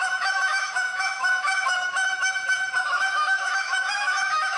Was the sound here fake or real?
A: fake